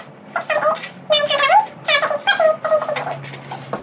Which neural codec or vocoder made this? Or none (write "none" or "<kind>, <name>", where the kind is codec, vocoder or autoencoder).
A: none